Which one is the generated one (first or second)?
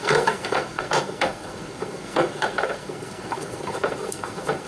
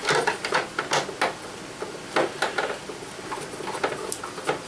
first